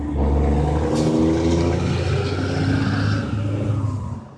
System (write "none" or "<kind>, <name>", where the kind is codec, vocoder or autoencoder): none